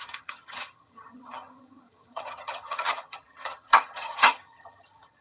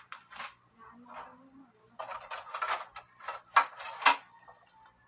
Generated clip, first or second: first